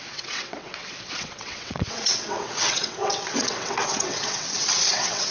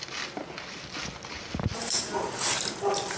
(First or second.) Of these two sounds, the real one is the second